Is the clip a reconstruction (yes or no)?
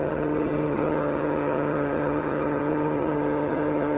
yes